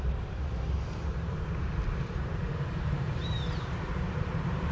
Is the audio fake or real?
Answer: fake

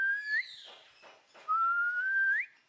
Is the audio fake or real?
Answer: real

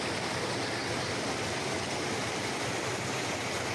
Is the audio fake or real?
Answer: real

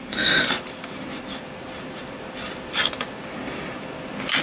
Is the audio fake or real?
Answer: real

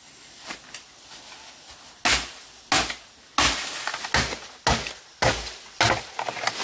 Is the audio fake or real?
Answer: real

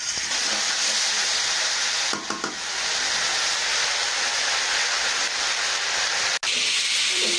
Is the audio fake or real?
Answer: real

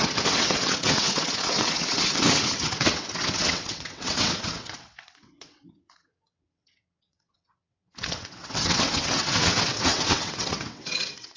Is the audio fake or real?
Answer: fake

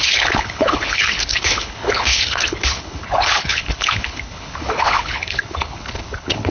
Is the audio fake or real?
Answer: fake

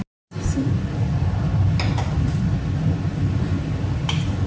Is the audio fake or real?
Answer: real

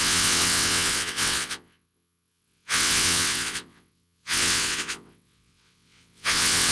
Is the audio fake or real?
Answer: fake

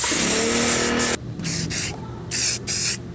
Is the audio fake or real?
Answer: real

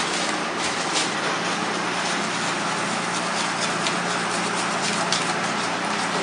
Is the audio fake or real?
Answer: real